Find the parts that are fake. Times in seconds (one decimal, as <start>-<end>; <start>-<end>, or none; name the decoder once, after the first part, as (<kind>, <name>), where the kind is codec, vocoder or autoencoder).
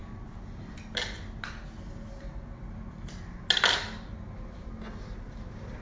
none